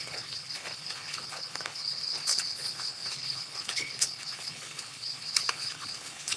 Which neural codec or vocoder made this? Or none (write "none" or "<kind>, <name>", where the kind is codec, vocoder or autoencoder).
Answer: codec, HILCodec